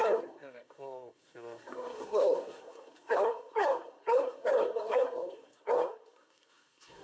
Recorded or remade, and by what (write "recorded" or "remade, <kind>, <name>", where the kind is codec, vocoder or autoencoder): remade, codec, SNAC